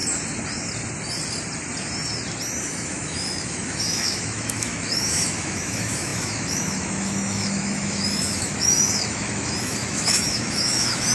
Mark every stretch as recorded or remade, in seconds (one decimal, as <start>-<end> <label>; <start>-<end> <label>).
0.0-2.6 recorded; 2.6-11.1 remade